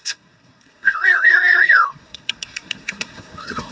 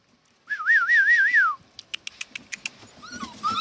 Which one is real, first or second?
second